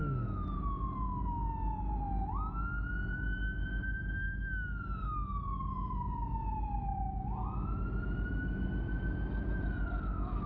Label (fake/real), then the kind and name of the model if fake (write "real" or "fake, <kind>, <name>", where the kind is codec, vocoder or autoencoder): real